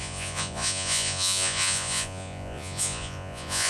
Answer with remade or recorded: remade